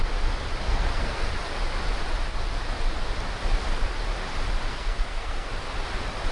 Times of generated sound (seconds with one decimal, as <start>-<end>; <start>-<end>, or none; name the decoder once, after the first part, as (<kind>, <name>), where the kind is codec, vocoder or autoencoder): 0.7-1.3 (codec, SNAC); 4.7-5.5